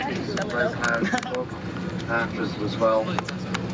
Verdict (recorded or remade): recorded